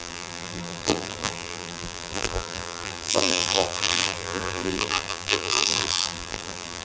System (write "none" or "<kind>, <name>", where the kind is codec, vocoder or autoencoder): vocoder, BigVGAN v2